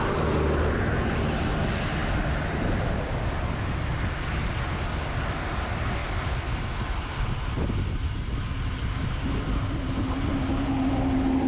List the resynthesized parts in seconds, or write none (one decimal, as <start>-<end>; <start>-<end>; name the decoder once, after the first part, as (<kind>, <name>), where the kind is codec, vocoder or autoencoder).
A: none